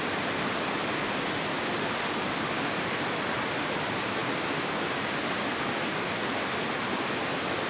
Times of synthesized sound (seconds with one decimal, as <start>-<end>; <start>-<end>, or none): none